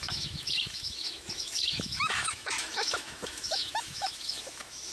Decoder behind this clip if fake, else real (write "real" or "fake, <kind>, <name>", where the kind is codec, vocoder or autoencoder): fake, autoencoder, DAC-VAE